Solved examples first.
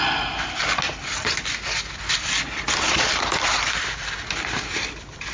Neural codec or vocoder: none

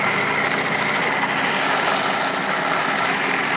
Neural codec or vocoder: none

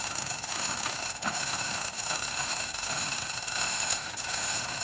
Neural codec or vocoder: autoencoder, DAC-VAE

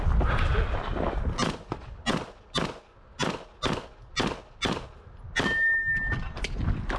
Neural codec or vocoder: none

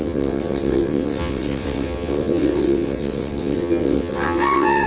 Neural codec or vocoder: vocoder, WaveNeXt